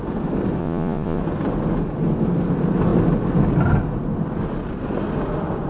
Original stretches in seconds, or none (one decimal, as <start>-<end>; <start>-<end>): 0.0-0.6; 1.2-5.7

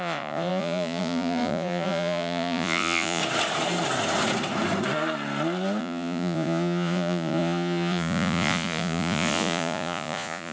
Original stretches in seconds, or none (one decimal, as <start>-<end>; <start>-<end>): 3.2-5.8

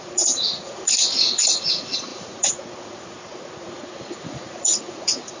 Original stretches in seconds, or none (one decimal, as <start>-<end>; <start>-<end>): none

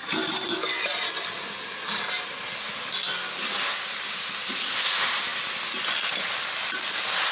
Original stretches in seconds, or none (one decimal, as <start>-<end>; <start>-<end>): 0.0-7.3

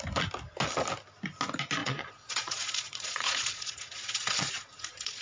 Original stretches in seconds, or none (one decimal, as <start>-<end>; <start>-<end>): 0.0-1.8

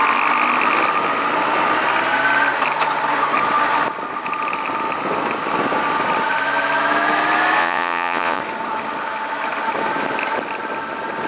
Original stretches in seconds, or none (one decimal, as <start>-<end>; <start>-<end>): 0.0-7.6; 8.4-11.3